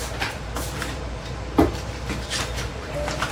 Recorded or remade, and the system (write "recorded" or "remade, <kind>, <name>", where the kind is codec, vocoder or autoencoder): remade, vocoder, BigVGAN v2